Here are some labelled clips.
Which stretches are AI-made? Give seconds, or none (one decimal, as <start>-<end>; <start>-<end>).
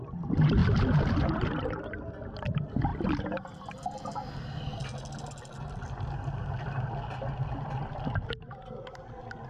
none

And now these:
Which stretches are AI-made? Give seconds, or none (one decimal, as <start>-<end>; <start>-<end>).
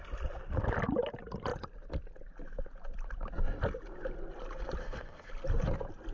4.8-5.3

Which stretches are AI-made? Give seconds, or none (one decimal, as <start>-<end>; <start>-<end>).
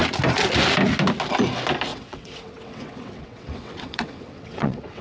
1.9-5.0